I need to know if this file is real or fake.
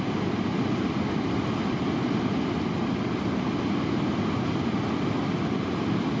real